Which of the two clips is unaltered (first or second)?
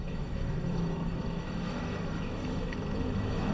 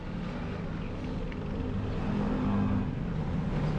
second